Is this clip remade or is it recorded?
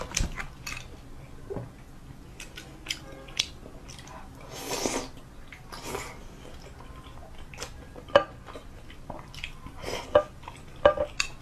recorded